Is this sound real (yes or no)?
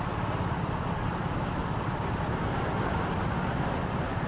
yes